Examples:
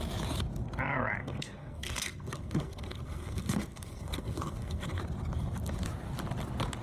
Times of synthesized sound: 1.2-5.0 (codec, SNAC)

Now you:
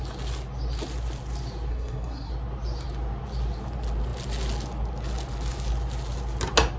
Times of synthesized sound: 1.7-2.3 (codec, SNAC)